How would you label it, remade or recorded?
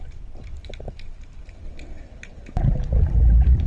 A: recorded